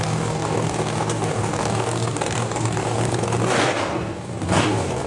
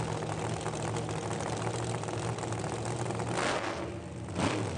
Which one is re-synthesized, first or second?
first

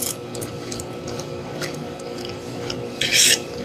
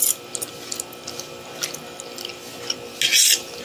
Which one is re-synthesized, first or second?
first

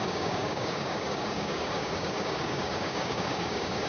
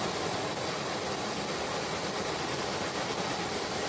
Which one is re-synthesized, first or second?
first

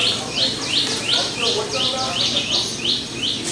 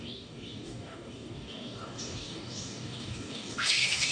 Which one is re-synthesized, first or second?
second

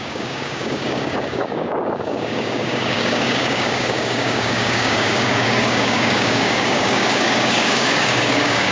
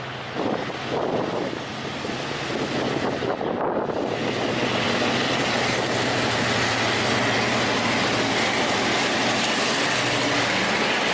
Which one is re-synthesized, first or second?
first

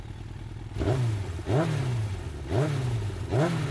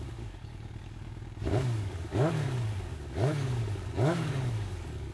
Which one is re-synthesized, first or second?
second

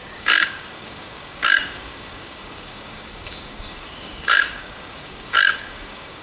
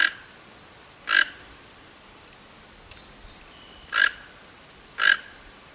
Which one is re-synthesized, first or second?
first